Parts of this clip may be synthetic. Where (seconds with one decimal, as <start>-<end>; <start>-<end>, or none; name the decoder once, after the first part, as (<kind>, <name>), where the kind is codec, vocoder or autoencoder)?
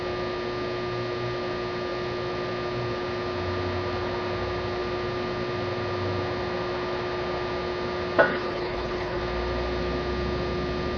8.3-9.2 (codec, HILCodec)